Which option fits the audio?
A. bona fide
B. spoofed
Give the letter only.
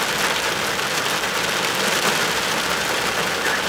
A